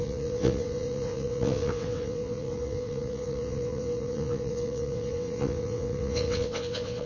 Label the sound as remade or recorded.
remade